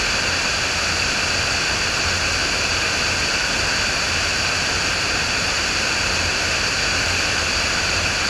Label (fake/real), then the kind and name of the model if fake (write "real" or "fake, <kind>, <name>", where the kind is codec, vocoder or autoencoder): real